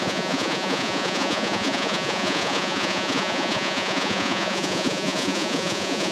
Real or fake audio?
fake